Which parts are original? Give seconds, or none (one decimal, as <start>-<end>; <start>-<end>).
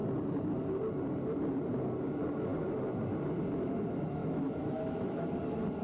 0.0-4.2; 5.2-5.8